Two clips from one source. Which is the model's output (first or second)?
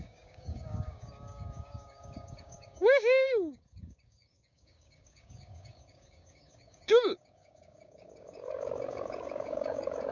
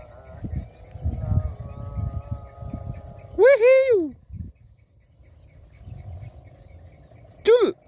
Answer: first